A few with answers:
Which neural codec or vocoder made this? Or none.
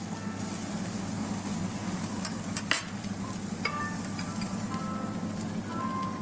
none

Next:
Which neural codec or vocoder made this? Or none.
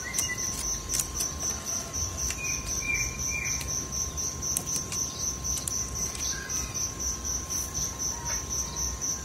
vocoder, BigVGAN v2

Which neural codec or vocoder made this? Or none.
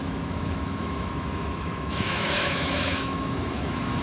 autoencoder, DAC-VAE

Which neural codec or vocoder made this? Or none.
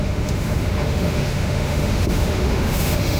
autoencoder, DAC-VAE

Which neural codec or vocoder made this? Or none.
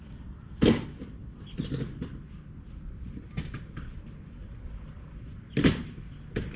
none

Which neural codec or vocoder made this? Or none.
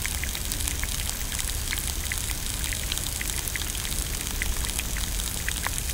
none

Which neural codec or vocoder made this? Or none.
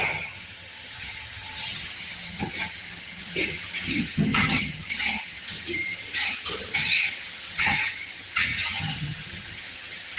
vocoder, HiFi-GAN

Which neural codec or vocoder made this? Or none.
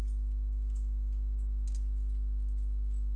none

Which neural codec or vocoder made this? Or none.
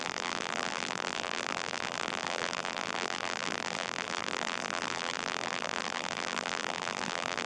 vocoder, BigVGAN v2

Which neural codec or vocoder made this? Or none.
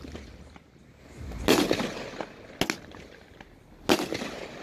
none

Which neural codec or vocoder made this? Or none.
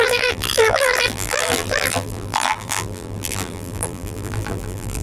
vocoder, BigVGAN v2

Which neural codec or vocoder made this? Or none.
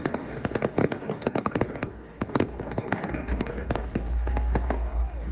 codec, DAC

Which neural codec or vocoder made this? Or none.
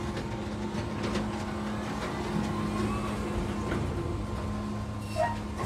none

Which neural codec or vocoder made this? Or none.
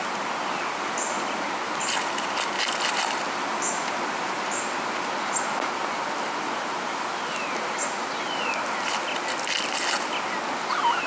none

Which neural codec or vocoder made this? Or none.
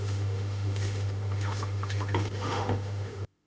autoencoder, DAC-VAE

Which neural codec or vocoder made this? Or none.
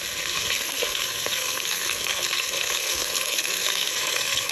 codec, SNAC